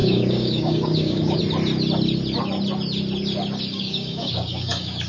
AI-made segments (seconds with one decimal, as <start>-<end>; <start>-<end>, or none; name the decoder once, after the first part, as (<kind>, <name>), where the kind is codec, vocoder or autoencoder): 0.0-1.4 (codec, DAC); 3.7-5.1